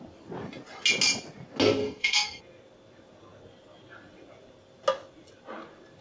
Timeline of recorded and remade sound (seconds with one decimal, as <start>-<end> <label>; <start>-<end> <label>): 0.0-1.8 recorded; 1.8-2.4 remade; 2.4-6.0 recorded